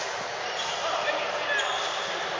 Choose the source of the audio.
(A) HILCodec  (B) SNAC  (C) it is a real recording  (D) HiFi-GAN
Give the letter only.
C